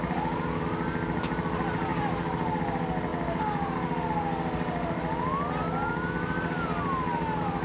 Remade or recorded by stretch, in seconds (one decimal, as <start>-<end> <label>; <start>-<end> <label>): 0.0-7.6 recorded